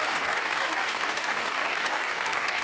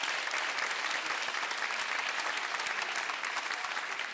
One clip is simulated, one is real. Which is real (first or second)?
second